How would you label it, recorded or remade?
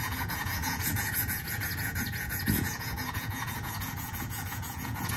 remade